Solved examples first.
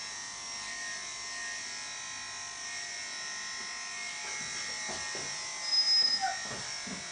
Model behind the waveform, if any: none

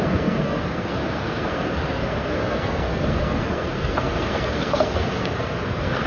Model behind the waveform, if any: codec, SNAC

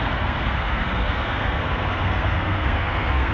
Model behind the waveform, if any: codec, SNAC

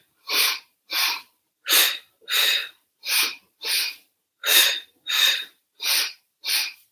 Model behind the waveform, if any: vocoder, BigVGAN v2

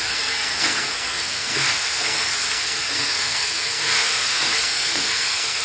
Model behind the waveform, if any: codec, SNAC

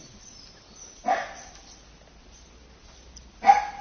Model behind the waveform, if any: none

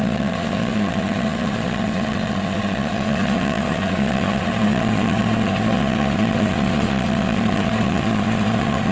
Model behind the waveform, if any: vocoder, Vocos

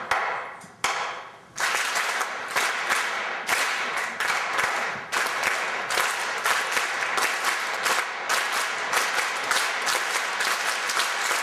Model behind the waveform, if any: none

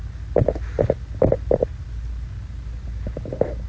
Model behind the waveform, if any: none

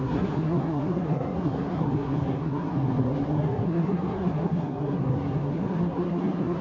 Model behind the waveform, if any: codec, SNAC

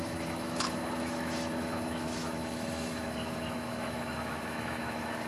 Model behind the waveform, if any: autoencoder, DAC-VAE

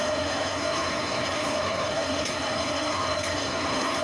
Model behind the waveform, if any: codec, SNAC